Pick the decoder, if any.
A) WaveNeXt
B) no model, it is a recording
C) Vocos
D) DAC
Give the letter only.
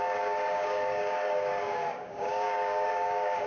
D